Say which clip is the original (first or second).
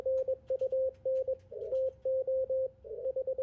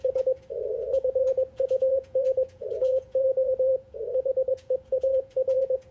first